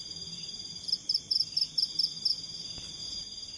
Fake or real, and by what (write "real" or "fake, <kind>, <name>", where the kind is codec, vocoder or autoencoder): real